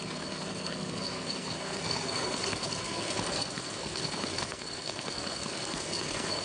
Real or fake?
fake